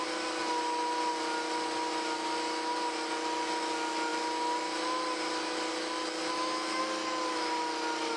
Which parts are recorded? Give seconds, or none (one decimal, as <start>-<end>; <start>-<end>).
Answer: 0.0-6.2; 6.8-8.2